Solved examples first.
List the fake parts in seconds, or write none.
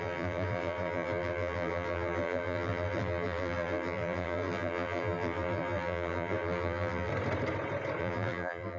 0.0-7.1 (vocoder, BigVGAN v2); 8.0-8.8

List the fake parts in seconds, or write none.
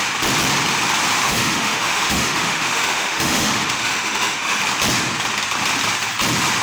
1.2-4.6 (autoencoder, DAC-VAE)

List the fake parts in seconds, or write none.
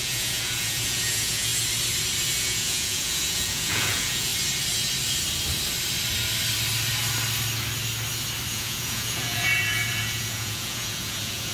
0.0-1.5 (vocoder, Vocos); 2.4-4.3; 8.5-11.5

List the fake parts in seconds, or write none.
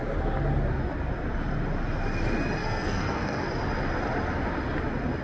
2.6-3.5 (codec, SNAC)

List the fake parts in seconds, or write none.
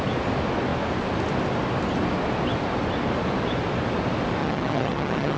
4.4-5.4 (vocoder, HiFi-GAN)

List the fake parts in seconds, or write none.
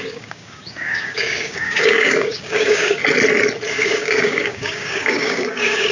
0.0-3.0 (codec, DAC); 3.7-5.9